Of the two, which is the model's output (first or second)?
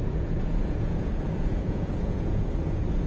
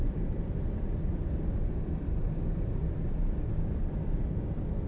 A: first